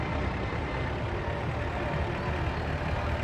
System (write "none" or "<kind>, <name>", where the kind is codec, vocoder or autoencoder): none